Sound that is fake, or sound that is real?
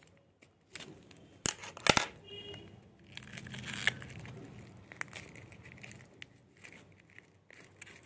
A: real